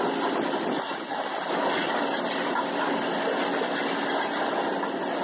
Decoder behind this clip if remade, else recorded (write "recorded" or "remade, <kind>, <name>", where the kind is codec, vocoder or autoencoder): remade, vocoder, BigVGAN v2